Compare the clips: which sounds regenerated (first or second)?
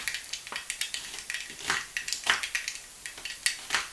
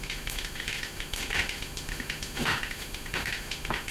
second